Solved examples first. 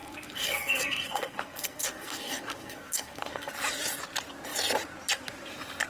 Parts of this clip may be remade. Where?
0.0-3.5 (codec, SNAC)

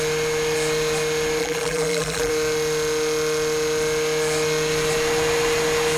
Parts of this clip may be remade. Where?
1.4-2.3 (vocoder, BigVGAN v2)